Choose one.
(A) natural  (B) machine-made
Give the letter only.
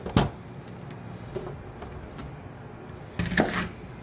A